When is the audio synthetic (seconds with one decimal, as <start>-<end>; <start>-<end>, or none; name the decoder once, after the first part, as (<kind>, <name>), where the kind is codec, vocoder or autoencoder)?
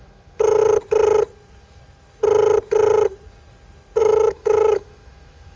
0.0-0.6 (autoencoder, DAC-VAE); 4.0-5.6